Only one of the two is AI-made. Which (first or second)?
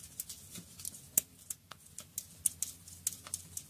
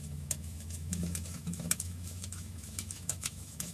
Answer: second